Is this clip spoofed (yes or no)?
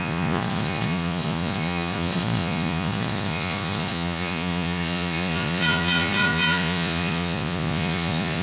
yes